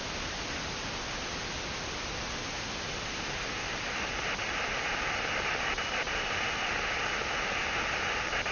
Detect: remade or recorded recorded